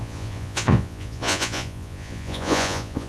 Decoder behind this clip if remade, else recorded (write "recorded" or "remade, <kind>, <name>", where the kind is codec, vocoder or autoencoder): remade, vocoder, Vocos